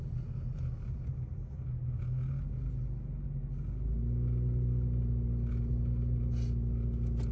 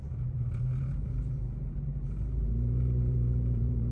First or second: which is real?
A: first